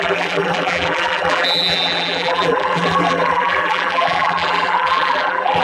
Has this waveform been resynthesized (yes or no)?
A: yes